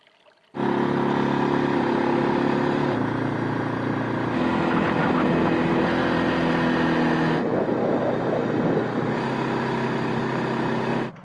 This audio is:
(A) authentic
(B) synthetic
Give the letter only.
A